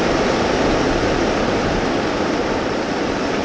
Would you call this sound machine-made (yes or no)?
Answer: no